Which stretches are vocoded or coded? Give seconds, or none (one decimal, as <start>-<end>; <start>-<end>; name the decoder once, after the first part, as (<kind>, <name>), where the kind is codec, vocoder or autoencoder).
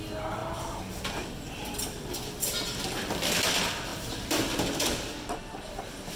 none